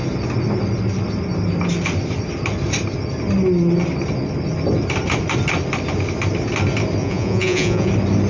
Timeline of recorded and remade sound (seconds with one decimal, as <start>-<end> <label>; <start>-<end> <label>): 0.0-7.0 recorded; 7.0-7.9 remade; 7.9-8.3 recorded